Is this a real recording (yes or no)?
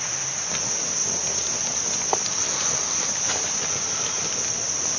yes